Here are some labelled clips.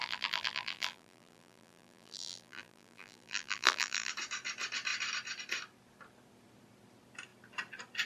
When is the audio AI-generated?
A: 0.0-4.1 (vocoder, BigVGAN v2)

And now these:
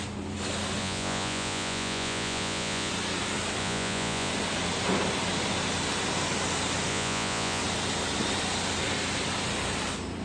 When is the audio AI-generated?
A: 0.8-2.9 (vocoder, Vocos); 3.6-4.3; 6.9-7.6

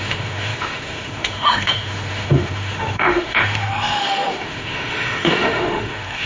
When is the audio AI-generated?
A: 0.0-6.3 (autoencoder, DAC-VAE)

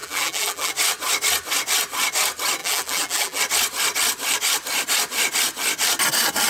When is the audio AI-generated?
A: 0.0-0.7 (vocoder, BigVGAN v2); 2.6-3.4

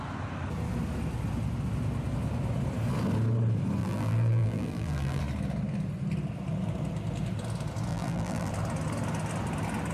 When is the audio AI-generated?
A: 3.8-5.2 (vocoder, BigVGAN v2); 7.9-8.5